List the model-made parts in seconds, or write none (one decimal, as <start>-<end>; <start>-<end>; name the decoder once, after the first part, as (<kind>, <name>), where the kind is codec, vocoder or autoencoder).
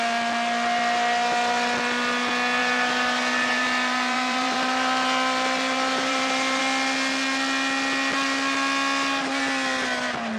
2.6-6.6 (vocoder, BigVGAN v2)